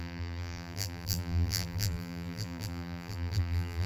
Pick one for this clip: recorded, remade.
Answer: remade